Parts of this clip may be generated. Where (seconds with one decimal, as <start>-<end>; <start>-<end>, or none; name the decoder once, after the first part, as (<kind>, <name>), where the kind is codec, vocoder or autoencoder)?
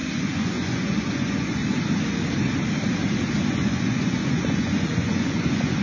0.0-1.6 (vocoder, Vocos); 3.5-5.8